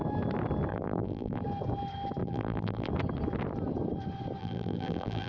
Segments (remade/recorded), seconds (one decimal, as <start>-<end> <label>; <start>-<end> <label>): 0.0-0.7 recorded; 0.7-1.4 remade; 1.4-2.2 recorded; 2.2-2.9 remade; 2.9-4.4 recorded; 4.4-5.3 remade